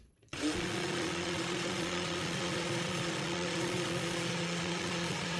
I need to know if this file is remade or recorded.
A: remade